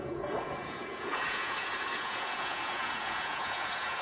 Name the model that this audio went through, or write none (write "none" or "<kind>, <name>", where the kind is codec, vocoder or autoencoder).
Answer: vocoder, Vocos